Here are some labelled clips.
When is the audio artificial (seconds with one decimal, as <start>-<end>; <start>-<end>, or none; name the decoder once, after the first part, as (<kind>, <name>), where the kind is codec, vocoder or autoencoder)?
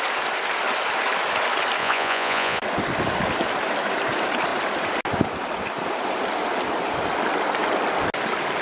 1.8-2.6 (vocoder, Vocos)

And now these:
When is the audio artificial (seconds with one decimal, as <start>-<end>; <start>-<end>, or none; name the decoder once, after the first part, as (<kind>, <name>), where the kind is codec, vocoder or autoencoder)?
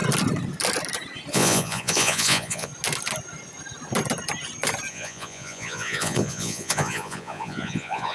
1.3-2.7 (vocoder, Vocos); 4.9-8.1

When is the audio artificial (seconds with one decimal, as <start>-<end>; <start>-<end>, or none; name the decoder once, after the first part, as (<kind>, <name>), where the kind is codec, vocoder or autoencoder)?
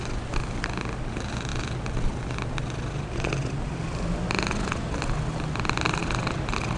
none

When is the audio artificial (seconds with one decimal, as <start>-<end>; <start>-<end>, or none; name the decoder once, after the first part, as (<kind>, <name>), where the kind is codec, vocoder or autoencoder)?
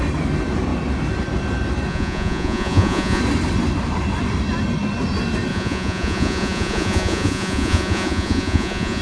1.9-3.2 (vocoder, Vocos); 5.5-9.0